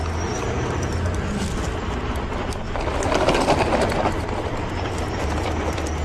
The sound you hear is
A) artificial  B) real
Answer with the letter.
B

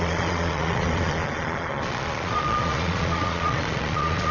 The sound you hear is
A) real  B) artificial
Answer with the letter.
B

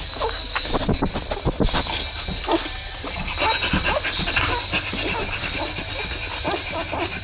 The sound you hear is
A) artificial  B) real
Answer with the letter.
B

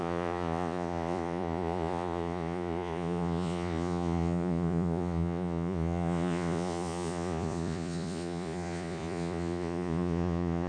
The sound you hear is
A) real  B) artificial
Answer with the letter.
B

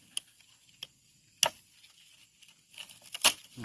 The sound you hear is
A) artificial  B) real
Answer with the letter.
B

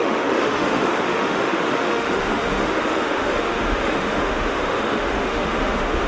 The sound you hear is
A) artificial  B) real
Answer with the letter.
A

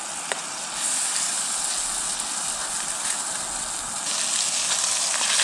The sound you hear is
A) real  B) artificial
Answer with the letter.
A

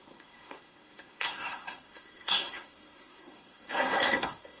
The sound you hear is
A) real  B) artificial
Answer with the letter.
B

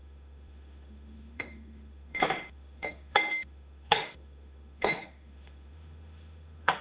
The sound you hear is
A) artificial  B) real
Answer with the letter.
A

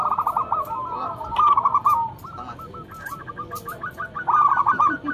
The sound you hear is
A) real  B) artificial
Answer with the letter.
A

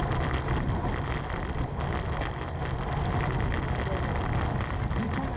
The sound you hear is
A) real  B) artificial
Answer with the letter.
A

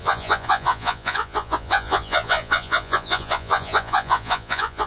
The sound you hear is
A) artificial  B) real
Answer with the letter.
A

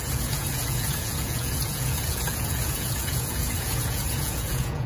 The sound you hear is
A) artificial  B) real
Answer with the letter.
A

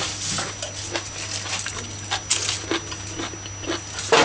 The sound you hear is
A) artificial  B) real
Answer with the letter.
B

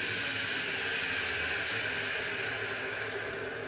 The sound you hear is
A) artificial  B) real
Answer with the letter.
B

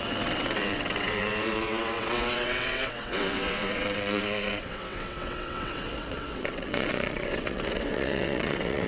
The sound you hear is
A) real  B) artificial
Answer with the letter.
B